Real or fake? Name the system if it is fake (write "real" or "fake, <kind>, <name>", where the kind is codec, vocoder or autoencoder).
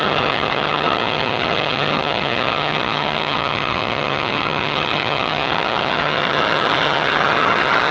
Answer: fake, vocoder, HiFi-GAN